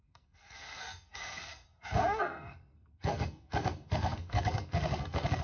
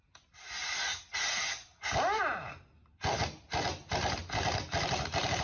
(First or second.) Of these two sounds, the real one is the second